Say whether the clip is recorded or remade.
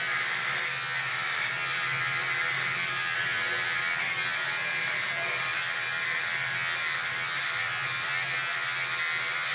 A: recorded